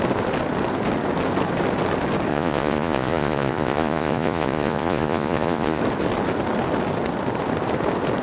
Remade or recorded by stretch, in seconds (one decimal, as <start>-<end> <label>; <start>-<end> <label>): 0.0-2.3 recorded; 2.3-5.8 remade; 5.8-8.2 recorded